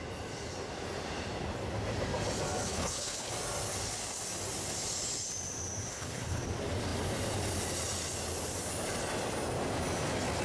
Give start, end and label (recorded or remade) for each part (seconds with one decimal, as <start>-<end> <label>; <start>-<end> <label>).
0.0-2.7 recorded; 2.7-3.3 remade; 3.3-5.9 recorded; 5.9-6.4 remade; 6.4-10.4 recorded